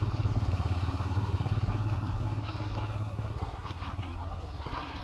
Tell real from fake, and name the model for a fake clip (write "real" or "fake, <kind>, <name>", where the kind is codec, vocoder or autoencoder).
fake, codec, SNAC